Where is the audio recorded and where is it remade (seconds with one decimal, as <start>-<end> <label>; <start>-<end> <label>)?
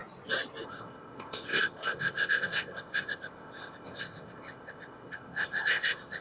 0.0-0.6 recorded; 0.6-6.2 remade